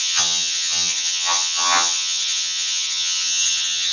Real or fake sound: fake